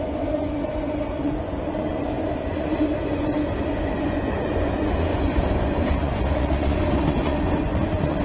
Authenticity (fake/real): fake